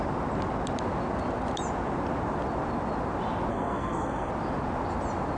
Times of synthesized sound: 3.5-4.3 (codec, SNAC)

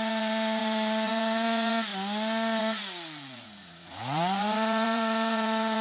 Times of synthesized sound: 0.0-1.9 (vocoder, Vocos); 2.6-5.8

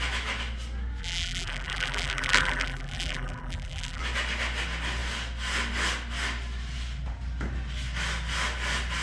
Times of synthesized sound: 1.0-4.0 (vocoder, BigVGAN v2)

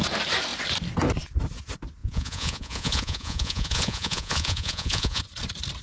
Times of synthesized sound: 2.0-5.2 (vocoder, Vocos)

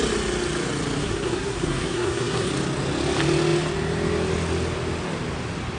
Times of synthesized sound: 1.0-2.5 (codec, SNAC)